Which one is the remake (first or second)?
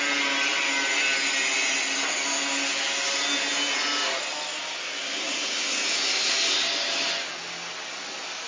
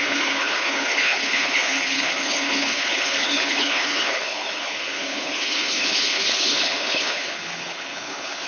second